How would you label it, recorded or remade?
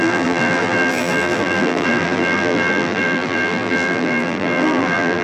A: remade